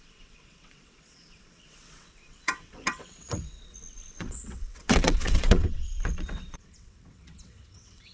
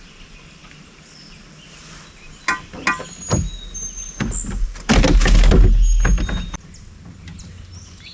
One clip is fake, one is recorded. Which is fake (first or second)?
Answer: first